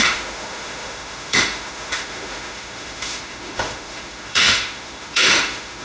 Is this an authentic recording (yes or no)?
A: no